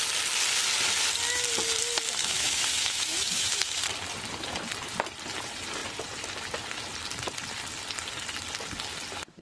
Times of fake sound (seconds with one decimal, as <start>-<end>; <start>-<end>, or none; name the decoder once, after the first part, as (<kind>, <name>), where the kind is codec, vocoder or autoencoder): 2.2-3.8 (autoencoder, DAC-VAE)